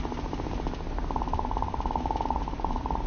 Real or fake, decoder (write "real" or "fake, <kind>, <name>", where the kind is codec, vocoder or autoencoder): real